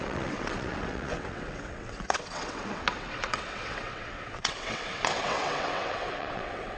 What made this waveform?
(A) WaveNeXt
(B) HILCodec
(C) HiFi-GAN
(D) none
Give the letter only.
A